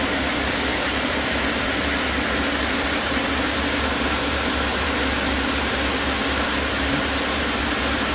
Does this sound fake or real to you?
fake